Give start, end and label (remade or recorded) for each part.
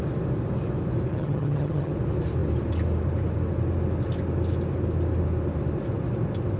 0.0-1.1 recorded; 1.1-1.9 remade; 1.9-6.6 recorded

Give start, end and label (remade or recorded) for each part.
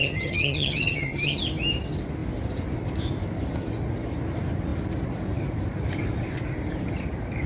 0.0-1.4 remade; 1.4-7.5 recorded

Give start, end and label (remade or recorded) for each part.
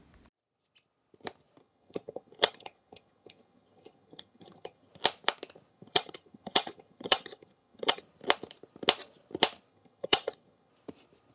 0.0-1.6 recorded; 1.6-4.9 remade; 4.9-5.7 recorded; 5.7-8.0 remade; 8.0-9.7 recorded; 9.7-10.7 remade; 10.7-11.3 recorded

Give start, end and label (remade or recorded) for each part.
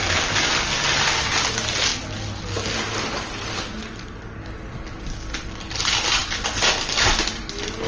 0.0-7.9 recorded